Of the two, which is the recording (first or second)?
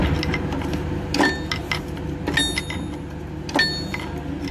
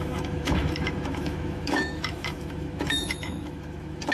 first